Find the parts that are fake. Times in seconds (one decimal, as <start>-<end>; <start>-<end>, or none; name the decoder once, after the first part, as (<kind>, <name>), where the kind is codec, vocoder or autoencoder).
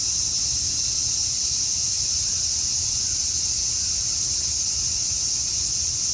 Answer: 1.2-3.2 (vocoder, BigVGAN v2)